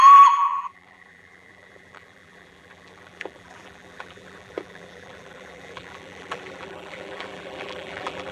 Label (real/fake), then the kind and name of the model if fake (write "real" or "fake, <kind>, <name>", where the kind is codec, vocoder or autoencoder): fake, vocoder, BigVGAN v2